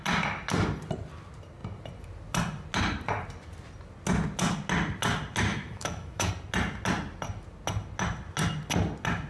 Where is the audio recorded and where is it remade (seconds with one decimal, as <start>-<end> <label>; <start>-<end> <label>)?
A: 0.0-5.5 recorded; 5.5-6.3 remade; 6.3-9.3 recorded